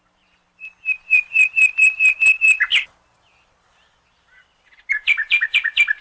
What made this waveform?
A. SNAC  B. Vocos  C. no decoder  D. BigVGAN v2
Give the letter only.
D